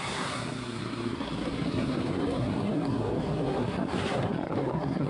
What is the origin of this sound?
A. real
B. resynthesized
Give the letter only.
B